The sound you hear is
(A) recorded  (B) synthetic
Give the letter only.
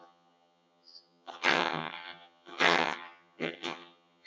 B